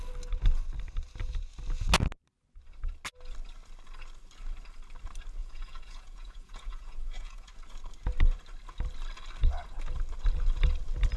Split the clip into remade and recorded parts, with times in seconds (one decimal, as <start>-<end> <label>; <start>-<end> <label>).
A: 0.0-5.4 recorded; 5.4-7.5 remade; 7.5-11.2 recorded